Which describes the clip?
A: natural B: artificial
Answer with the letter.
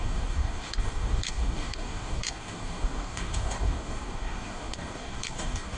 B